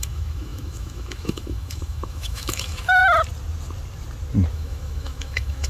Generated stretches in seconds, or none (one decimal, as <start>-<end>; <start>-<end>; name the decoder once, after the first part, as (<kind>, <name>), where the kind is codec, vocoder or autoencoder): 0.0-3.0 (autoencoder, DAC-VAE); 4.5-5.7